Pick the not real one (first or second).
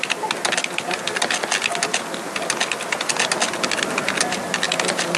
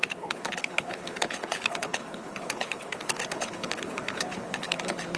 second